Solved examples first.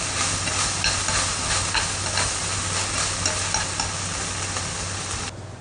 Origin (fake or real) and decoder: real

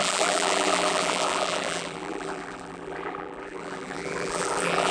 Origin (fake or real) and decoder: fake, vocoder, BigVGAN v2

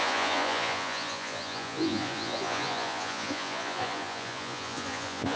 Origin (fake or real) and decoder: fake, vocoder, Vocos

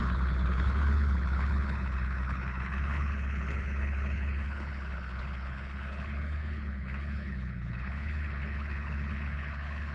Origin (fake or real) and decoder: fake, codec, HILCodec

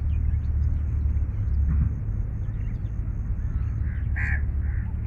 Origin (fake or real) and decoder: real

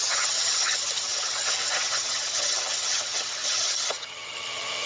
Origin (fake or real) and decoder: fake, vocoder, HiFi-GAN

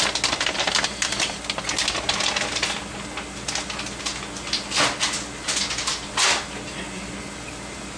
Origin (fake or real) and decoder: real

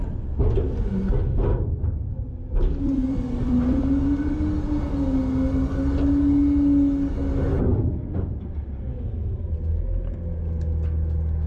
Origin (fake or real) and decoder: real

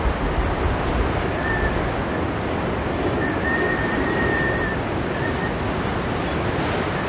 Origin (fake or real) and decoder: real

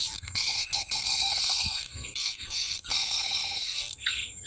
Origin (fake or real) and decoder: fake, codec, SNAC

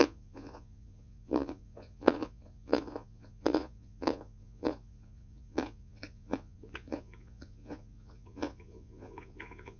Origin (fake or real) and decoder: fake, vocoder, Vocos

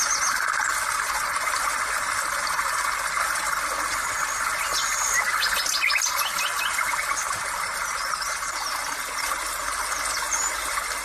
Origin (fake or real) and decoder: real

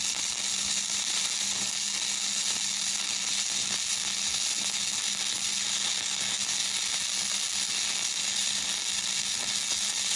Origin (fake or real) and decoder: real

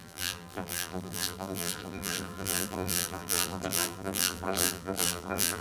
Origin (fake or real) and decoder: fake, vocoder, BigVGAN v2